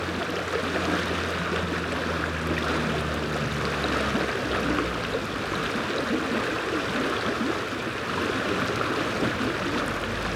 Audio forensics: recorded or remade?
recorded